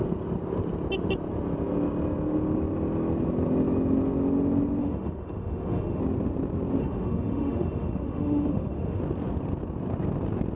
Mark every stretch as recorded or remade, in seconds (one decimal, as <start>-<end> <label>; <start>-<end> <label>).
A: 0.0-4.8 recorded; 4.8-6.0 remade; 6.0-6.8 recorded; 6.8-9.0 remade; 9.0-10.6 recorded